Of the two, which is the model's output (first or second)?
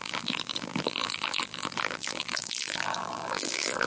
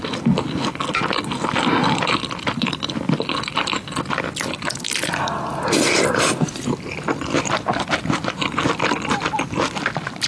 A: first